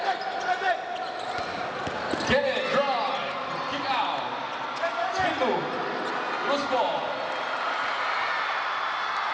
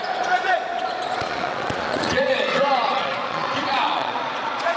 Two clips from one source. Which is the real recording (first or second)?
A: first